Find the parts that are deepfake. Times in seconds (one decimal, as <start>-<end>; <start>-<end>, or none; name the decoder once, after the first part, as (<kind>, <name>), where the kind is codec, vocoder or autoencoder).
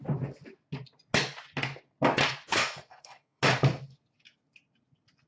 2.5-3.4 (codec, SNAC)